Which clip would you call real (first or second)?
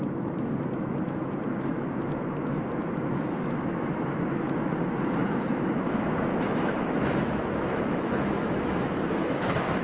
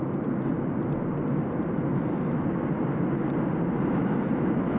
second